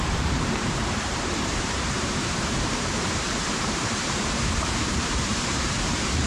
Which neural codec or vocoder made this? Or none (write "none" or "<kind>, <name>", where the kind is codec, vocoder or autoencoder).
vocoder, BigVGAN v2